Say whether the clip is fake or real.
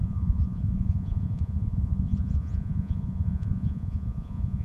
fake